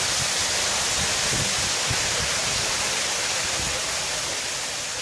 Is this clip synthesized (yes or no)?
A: no